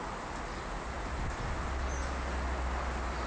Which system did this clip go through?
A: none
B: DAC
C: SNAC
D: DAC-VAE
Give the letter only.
A